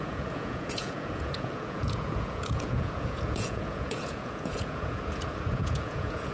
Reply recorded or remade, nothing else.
remade